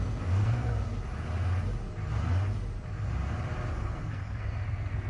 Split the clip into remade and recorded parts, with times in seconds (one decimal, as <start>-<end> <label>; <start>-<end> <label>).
0.0-0.7 remade; 0.7-3.7 recorded; 3.7-5.1 remade